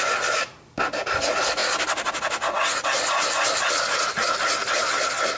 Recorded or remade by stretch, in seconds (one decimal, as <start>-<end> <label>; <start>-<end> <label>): 0.0-5.4 recorded